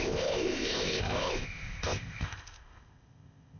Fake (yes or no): yes